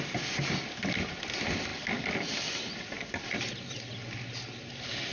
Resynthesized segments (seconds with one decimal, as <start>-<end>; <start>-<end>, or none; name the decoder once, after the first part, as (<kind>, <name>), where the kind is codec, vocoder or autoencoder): none